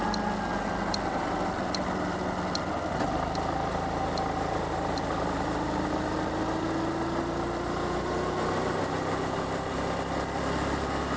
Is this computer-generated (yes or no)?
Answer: no